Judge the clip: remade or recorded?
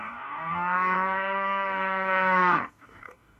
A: remade